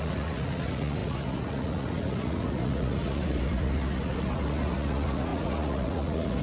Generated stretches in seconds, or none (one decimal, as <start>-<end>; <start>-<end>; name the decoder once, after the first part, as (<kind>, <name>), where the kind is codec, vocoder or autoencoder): 0.0-6.4 (vocoder, Vocos)